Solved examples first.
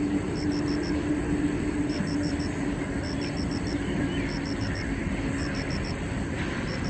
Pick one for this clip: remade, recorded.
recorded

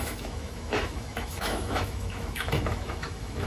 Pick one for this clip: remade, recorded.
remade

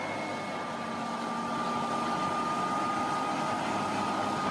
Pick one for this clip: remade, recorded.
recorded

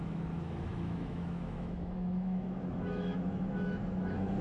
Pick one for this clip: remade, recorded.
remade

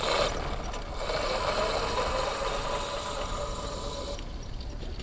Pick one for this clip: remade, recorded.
recorded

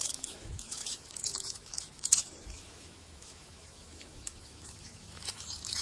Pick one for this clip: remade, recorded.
remade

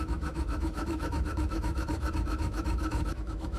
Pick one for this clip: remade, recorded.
remade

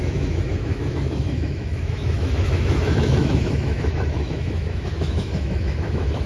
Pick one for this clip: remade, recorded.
remade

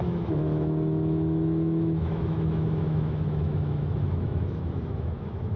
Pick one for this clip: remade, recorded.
remade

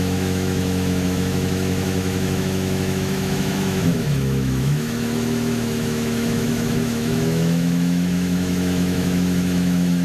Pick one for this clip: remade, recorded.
remade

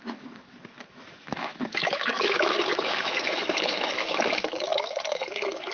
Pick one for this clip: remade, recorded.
remade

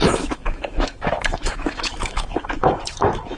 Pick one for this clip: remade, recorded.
remade